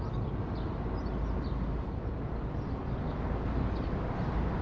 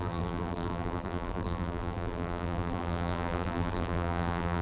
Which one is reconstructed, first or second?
second